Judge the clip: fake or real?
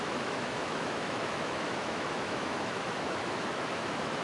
fake